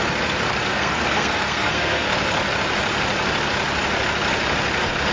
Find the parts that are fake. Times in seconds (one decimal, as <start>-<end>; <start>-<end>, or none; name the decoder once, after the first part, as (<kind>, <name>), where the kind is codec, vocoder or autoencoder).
0.7-2.1 (codec, SNAC)